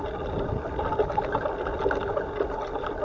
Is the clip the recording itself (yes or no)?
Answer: yes